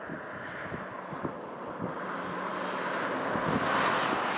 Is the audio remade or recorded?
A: recorded